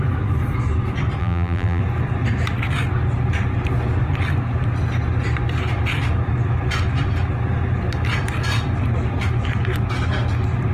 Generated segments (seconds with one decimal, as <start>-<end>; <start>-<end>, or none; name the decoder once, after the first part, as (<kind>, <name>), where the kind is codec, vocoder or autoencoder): 1.2-1.8 (vocoder, BigVGAN v2)